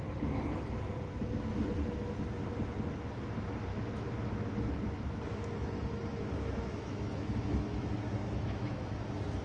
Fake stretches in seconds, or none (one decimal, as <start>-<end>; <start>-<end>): 3.7-9.0